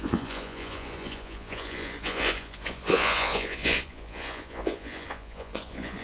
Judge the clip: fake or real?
fake